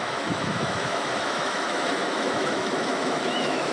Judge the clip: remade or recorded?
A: remade